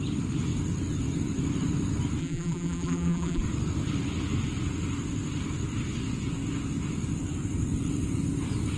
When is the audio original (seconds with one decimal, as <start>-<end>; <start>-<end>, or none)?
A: 0.0-2.2; 3.4-8.8